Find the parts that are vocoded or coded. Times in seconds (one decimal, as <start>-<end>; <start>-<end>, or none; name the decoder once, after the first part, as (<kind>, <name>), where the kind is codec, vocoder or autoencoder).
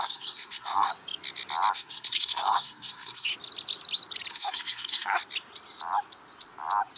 0.0-0.9 (codec, SNAC); 1.7-3.3; 4.3-5.2